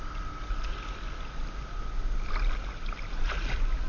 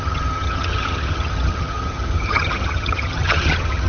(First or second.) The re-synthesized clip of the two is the second